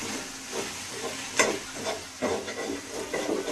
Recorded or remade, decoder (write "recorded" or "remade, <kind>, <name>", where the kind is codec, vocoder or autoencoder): recorded